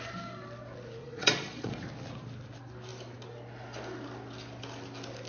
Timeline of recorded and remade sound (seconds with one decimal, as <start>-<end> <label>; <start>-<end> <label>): 0.0-1.0 recorded; 1.0-1.8 remade; 1.8-5.3 recorded